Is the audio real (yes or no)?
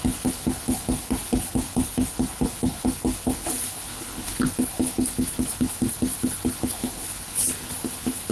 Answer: no